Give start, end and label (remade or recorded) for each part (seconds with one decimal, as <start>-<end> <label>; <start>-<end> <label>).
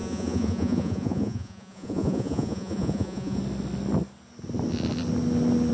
0.0-3.4 remade; 3.4-5.7 recorded